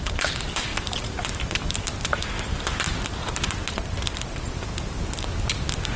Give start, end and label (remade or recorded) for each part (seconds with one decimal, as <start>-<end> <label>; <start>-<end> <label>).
0.0-6.0 recorded